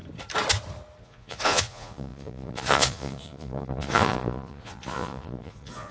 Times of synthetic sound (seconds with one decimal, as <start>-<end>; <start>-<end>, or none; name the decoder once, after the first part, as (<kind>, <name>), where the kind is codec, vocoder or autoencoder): 1.0-5.9 (vocoder, Vocos)